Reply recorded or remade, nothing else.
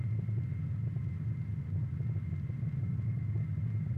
recorded